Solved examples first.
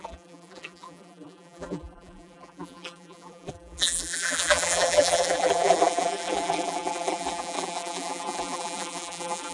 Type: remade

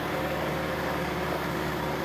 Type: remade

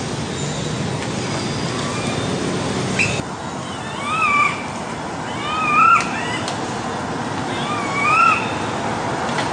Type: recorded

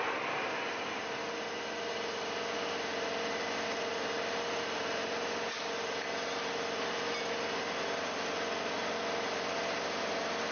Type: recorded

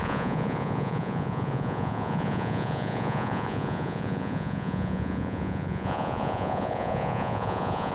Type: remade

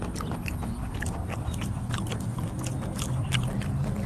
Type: recorded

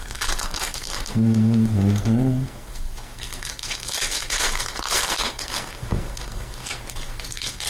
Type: remade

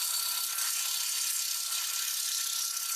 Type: recorded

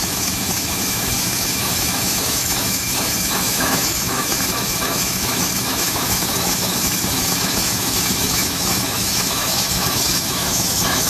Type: remade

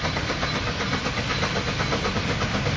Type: recorded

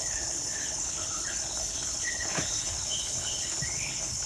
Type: remade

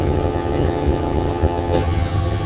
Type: remade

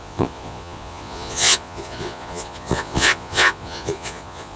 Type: remade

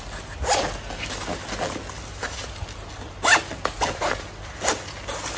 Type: recorded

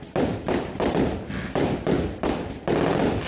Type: recorded